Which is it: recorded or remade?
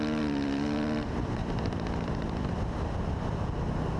recorded